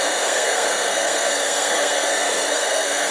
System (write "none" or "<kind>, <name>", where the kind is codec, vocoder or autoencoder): codec, SNAC